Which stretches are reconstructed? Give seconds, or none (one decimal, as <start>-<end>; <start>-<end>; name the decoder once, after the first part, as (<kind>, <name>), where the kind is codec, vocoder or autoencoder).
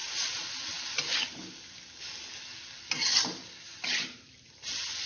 3.1-5.1 (vocoder, BigVGAN v2)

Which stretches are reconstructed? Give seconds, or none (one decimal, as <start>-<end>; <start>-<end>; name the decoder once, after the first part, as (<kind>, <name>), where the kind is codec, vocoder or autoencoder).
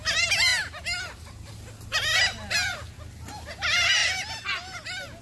none